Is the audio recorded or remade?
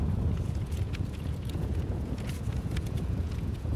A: remade